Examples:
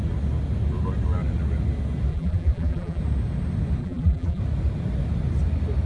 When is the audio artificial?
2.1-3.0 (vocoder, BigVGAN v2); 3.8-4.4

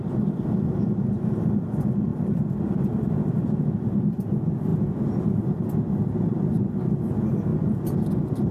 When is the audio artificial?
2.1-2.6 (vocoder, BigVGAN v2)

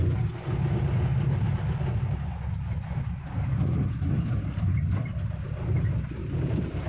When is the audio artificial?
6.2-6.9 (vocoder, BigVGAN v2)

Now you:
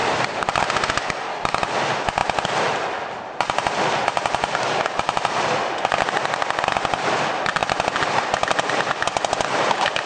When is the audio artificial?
none

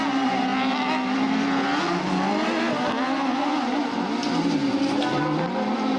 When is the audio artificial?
none

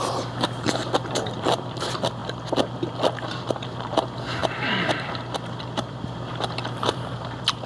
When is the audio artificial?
0.0-2.2 (vocoder, BigVGAN v2); 3.3-7.7